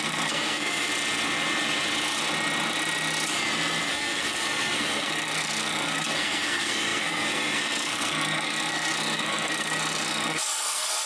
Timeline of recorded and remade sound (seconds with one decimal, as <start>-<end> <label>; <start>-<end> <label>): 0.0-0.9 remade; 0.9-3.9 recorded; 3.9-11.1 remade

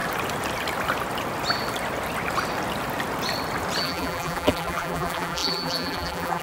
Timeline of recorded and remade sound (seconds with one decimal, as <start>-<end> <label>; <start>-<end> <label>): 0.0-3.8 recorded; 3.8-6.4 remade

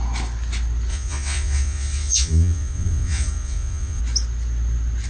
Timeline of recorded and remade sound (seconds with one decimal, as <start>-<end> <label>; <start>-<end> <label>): 0.0-0.9 recorded; 0.9-4.0 remade; 4.0-5.1 recorded

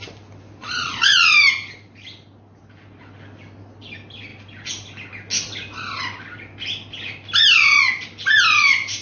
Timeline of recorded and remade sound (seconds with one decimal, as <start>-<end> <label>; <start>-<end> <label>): 0.0-0.6 recorded; 0.6-1.3 remade; 1.3-9.0 recorded

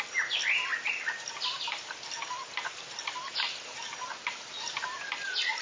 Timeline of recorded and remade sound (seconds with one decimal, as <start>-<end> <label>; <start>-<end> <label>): 0.0-5.6 recorded

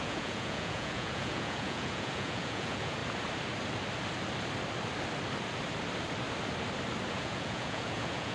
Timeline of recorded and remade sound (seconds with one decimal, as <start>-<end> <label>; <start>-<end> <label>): 0.0-3.0 remade; 3.0-7.1 recorded; 7.1-8.3 remade

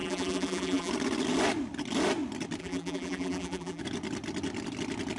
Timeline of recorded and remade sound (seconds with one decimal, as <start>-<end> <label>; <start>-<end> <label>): 0.0-0.9 remade; 0.9-2.6 recorded; 2.6-3.8 remade; 3.8-5.2 recorded

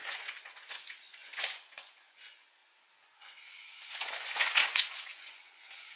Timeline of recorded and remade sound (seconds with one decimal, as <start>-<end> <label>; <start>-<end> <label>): 0.0-6.0 remade